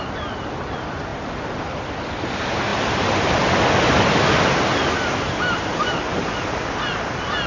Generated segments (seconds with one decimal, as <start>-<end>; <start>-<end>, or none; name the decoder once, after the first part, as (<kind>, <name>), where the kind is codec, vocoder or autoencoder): none